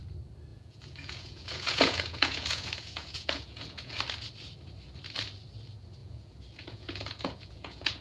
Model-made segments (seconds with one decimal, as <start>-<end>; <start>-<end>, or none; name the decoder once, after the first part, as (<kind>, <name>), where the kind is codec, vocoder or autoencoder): 0.5-4.0 (vocoder, Vocos); 6.0-8.0